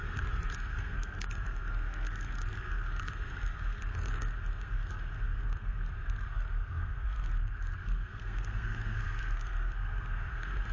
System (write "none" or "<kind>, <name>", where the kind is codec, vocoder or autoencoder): codec, SNAC